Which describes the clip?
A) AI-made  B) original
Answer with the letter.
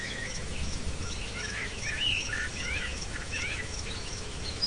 A